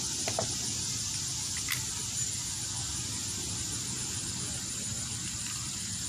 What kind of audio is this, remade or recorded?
recorded